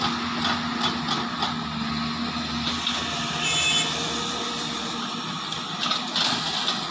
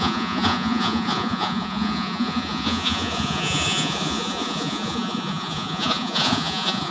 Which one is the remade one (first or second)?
second